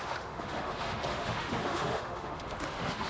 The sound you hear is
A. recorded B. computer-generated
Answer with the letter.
B